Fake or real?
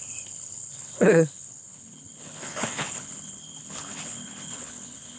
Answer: fake